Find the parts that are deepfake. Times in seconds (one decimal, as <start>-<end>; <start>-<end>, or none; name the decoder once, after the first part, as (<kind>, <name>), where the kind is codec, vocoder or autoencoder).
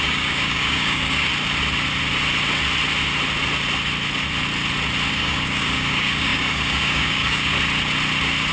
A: 0.0-1.3 (codec, DAC); 5.1-7.5